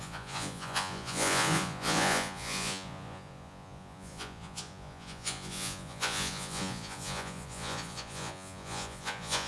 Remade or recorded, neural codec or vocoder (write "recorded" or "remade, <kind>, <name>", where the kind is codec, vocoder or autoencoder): remade, vocoder, Vocos